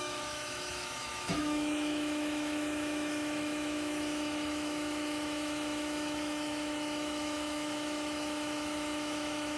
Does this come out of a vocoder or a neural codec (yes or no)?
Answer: yes